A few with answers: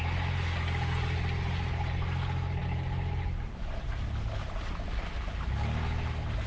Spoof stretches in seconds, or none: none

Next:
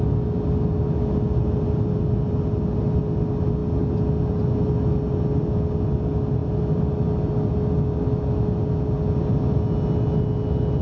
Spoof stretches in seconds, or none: none

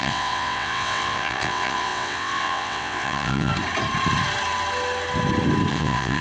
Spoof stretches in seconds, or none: 0.0-3.5 (vocoder, WaveNeXt); 5.7-6.2

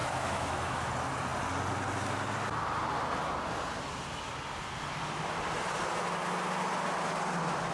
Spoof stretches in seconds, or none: 0.0-0.9 (autoencoder, DAC-VAE)

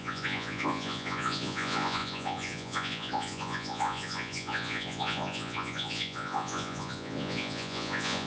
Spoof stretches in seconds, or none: 0.0-8.3 (vocoder, Vocos)

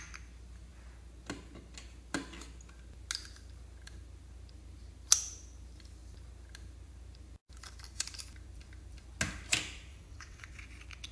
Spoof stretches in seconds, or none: 9.9-10.5 (vocoder, WaveNeXt)